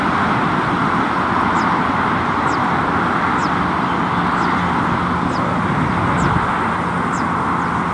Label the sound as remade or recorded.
recorded